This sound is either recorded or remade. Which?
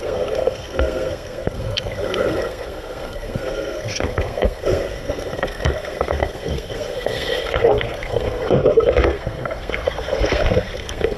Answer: remade